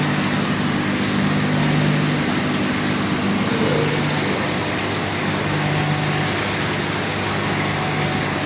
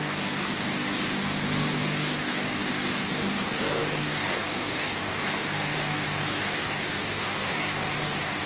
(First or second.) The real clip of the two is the first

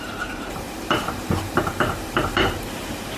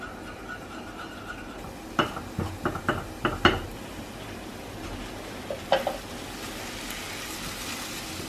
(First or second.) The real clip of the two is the second